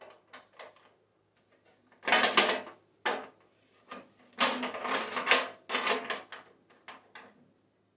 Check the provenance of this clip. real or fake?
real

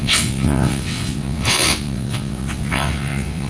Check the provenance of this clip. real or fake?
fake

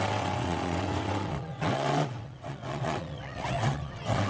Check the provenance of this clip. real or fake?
fake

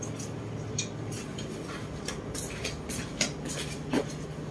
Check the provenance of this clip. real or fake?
real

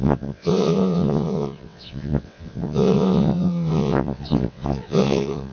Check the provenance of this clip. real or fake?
fake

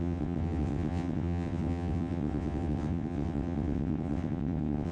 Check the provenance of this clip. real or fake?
fake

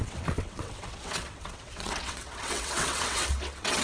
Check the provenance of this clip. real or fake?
fake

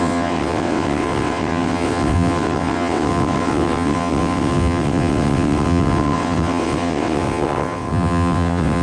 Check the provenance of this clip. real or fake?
fake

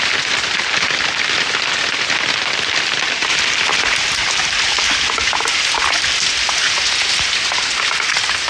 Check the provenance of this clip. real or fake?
real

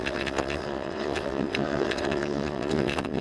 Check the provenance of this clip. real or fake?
fake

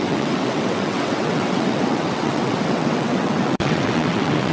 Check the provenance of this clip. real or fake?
fake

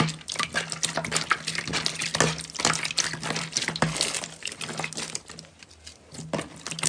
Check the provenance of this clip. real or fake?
real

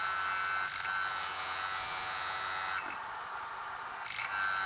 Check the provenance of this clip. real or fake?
real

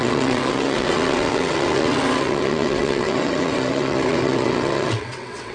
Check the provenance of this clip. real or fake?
fake